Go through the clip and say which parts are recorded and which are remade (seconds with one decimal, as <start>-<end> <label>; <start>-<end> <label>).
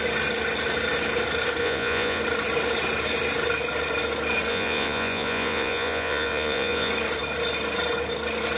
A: 0.0-1.6 recorded; 1.6-2.2 remade; 2.2-4.5 recorded; 4.5-6.9 remade; 6.9-8.6 recorded